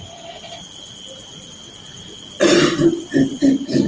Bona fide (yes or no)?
yes